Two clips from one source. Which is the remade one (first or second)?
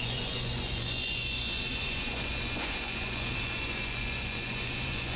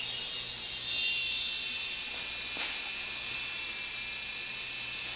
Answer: first